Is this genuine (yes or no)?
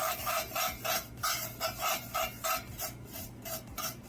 no